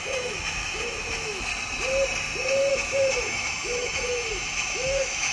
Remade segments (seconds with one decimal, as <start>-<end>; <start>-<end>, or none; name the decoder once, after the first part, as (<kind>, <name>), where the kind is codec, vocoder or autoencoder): 0.0-1.5 (autoencoder, DAC-VAE); 2.7-5.3